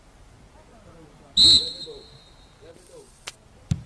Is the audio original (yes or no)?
yes